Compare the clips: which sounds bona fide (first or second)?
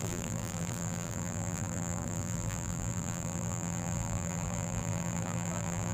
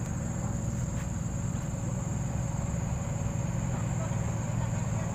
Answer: second